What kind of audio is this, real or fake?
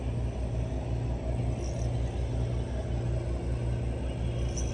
real